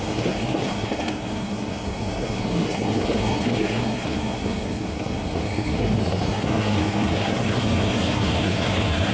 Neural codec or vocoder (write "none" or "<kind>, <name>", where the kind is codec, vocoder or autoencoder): codec, SNAC